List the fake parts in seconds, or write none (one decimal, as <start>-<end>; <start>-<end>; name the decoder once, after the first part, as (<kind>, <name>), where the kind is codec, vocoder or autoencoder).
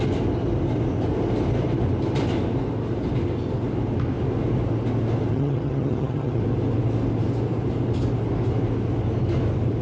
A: 5.3-6.4 (vocoder, HiFi-GAN)